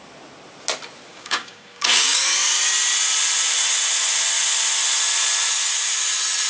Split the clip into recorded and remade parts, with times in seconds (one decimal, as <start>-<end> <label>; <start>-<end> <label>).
0.0-1.1 recorded; 1.1-2.2 remade; 2.2-6.5 recorded